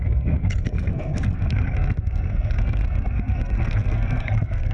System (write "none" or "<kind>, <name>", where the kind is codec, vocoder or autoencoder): codec, SNAC